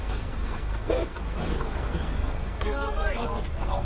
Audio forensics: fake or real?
fake